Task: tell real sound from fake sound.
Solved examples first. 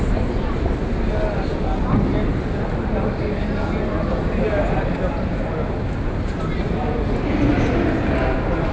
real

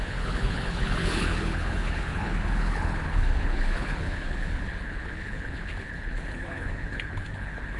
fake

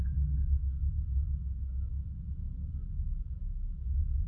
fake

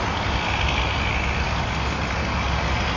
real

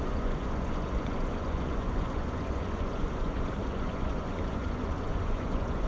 fake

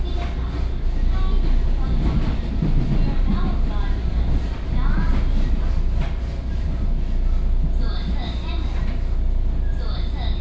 real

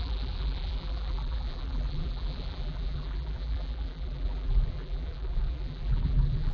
fake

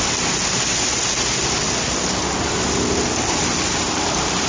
real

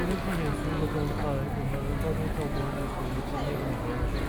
real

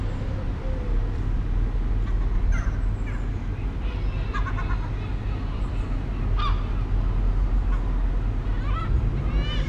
real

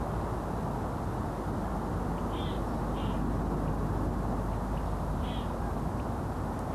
real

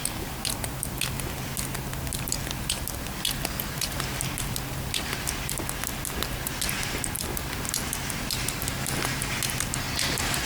real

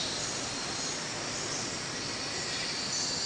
real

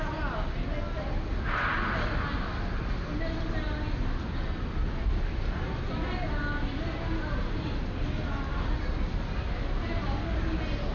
real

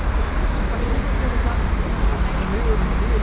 real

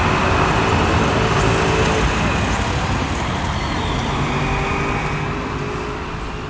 real